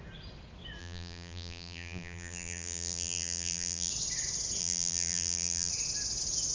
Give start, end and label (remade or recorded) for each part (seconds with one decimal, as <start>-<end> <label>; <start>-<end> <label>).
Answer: 0.0-0.8 recorded; 0.8-3.9 remade; 3.9-4.6 recorded; 4.6-5.7 remade; 5.7-6.5 recorded